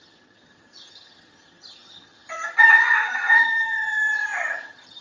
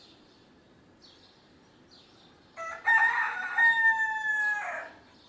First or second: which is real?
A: second